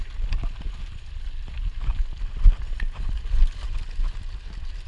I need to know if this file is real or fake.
real